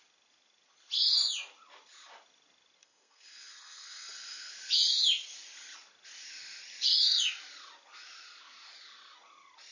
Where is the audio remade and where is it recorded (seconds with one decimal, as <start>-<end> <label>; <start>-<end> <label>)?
0.0-2.8 recorded; 2.8-4.5 remade; 4.5-9.7 recorded